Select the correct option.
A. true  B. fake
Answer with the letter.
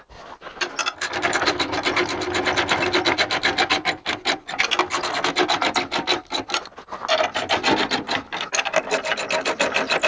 A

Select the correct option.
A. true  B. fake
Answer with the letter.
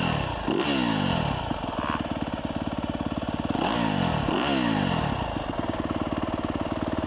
A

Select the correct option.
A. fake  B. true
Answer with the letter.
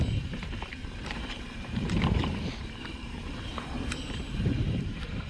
A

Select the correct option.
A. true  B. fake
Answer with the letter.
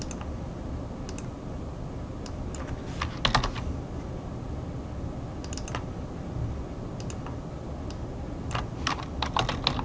A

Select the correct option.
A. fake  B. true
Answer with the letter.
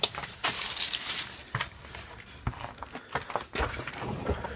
B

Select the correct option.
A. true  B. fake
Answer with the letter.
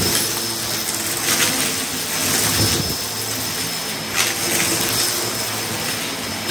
A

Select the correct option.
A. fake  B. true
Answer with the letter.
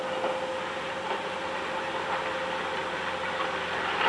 B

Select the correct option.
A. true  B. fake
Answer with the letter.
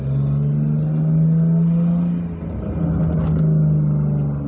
A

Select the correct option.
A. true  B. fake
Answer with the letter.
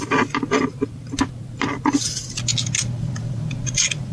A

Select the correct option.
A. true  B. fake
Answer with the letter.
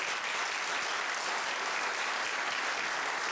A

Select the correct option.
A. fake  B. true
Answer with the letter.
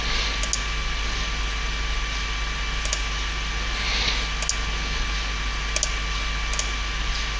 B